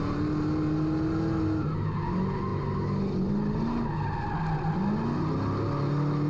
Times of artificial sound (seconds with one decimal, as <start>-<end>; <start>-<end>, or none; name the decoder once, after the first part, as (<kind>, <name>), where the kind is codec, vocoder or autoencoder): none

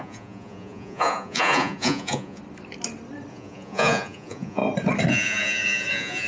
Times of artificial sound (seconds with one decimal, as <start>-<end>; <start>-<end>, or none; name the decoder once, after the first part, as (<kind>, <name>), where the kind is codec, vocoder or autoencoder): 0.0-2.4 (vocoder, Vocos); 3.3-4.6; 5.1-6.3

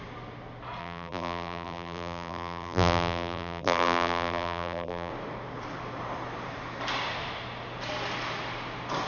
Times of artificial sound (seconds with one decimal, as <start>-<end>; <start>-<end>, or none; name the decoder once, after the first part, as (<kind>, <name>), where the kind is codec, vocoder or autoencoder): 0.8-5.1 (vocoder, BigVGAN v2)